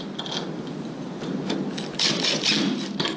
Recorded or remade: recorded